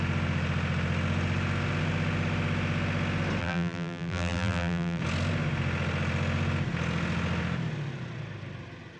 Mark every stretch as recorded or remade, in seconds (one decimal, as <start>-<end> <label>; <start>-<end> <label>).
0.0-3.4 recorded; 3.4-5.0 remade; 5.0-9.0 recorded